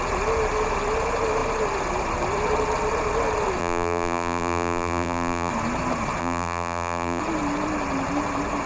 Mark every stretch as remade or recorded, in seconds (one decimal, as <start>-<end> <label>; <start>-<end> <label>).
0.0-3.6 recorded; 3.6-5.5 remade; 5.5-6.2 recorded; 6.2-7.2 remade; 7.2-8.7 recorded